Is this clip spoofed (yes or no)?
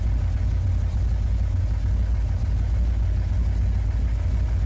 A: no